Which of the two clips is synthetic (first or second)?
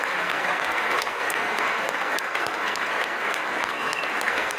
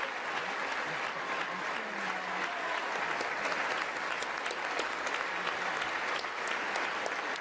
first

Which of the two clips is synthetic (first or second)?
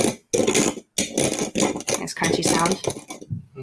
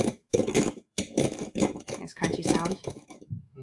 second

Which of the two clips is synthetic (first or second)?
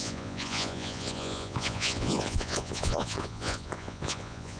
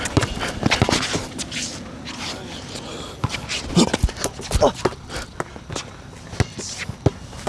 first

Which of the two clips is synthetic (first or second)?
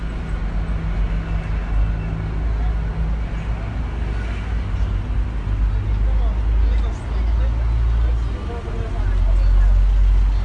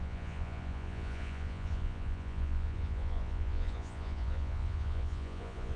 second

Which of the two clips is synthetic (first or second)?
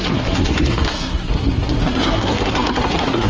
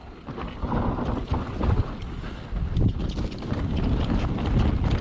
first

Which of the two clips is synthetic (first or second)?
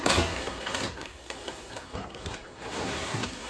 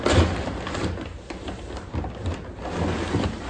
first